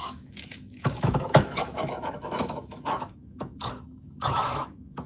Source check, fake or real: fake